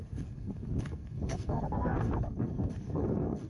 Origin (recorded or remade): remade